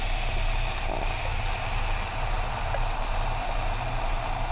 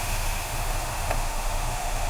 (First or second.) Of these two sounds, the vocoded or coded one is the second